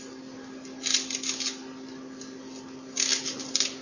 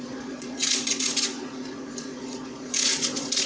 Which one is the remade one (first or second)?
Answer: second